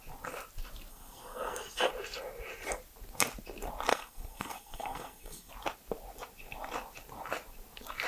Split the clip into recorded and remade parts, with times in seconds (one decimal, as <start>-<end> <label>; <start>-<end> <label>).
0.0-0.9 recorded; 0.9-1.9 remade; 1.9-3.9 recorded; 3.9-5.5 remade; 5.5-8.1 recorded

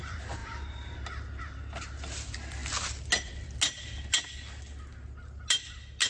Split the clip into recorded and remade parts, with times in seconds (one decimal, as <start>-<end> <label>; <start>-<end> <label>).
0.0-6.1 recorded

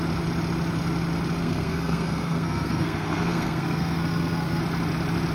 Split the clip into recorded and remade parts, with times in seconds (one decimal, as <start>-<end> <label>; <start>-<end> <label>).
0.0-1.4 recorded; 1.4-4.6 remade; 4.6-5.3 recorded

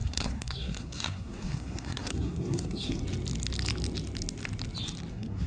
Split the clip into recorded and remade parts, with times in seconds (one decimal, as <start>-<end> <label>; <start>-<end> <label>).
0.0-3.0 remade; 3.0-5.1 recorded; 5.1-5.5 remade

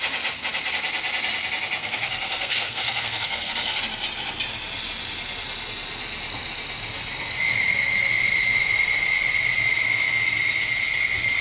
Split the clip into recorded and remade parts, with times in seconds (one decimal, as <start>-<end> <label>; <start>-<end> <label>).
0.0-1.8 recorded; 1.8-3.8 remade; 3.8-11.4 recorded